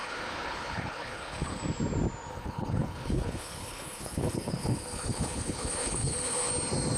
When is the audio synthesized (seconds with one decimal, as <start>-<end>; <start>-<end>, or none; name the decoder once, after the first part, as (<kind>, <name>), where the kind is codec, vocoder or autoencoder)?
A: 0.0-1.6 (codec, HILCodec); 2.3-6.5